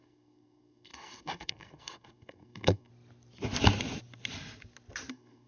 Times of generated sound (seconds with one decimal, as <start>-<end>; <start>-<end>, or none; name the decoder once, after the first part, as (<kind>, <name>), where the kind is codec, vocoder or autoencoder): 0.0-2.9 (codec, SNAC); 5.1-5.5